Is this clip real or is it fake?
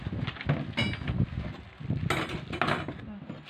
real